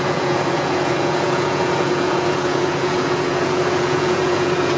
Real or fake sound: fake